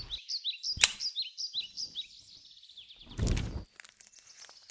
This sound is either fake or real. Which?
real